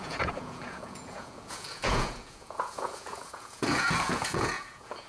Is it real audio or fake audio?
fake